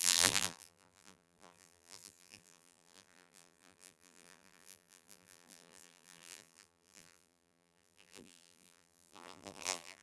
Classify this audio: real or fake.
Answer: fake